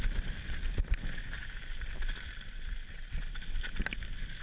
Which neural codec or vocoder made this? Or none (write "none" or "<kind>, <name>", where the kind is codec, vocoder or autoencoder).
none